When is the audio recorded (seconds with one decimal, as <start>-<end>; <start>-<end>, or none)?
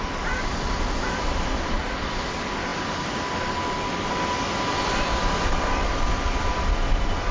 0.0-7.3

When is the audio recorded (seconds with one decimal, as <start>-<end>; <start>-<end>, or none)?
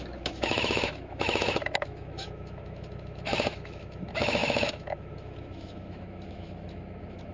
none